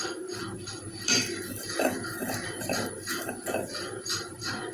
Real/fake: fake